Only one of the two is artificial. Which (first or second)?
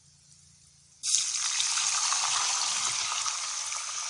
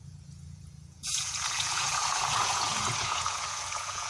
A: second